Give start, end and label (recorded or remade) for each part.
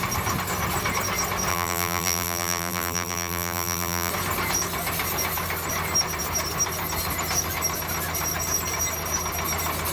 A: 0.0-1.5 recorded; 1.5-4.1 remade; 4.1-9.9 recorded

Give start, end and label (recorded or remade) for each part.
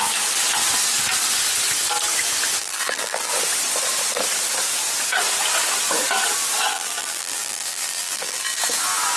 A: 0.0-2.6 recorded; 2.6-3.3 remade; 3.3-6.7 recorded; 6.7-8.6 remade; 8.6-9.2 recorded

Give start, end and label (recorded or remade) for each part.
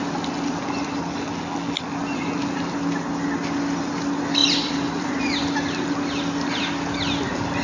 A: 0.0-4.4 recorded; 4.4-5.2 remade; 5.2-7.6 recorded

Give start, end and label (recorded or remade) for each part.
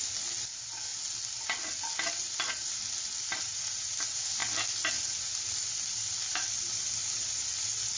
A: 0.0-7.0 recorded; 7.0-7.6 remade; 7.6-8.0 recorded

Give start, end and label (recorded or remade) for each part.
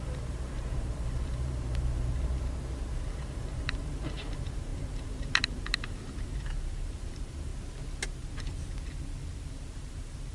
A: 0.0-2.3 remade; 2.3-3.1 recorded; 3.1-7.5 remade; 7.5-9.5 recorded; 9.5-10.3 remade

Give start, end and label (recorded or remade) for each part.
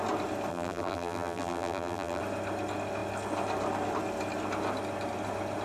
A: 0.0-0.5 recorded; 0.5-2.2 remade; 2.2-5.6 recorded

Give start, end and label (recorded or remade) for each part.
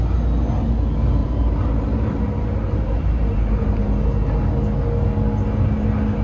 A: 0.0-1.2 recorded; 1.2-3.8 remade; 3.8-6.2 recorded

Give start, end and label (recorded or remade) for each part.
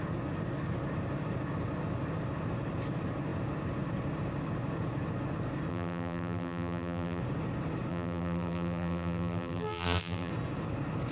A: 0.0-5.7 recorded; 5.7-7.2 remade; 7.2-7.9 recorded; 7.9-10.3 remade; 10.3-11.1 recorded